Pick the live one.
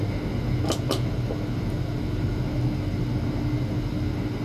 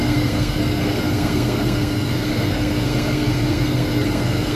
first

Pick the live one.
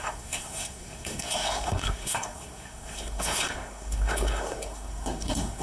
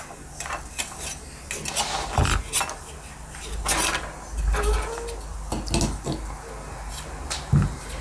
second